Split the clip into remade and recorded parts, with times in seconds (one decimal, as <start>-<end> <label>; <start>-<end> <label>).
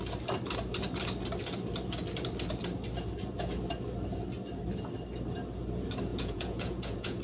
0.0-6.1 recorded; 6.1-7.2 remade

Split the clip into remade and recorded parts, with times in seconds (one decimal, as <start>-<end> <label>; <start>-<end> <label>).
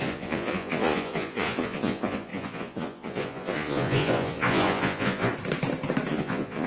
0.0-5.3 remade; 5.3-6.1 recorded; 6.1-6.7 remade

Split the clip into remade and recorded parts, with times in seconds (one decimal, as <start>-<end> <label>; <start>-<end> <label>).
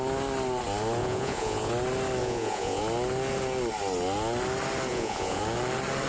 0.0-1.0 recorded; 1.0-1.7 remade; 1.7-2.2 recorded; 2.2-2.8 remade; 2.8-4.9 recorded; 4.9-5.4 remade; 5.4-6.1 recorded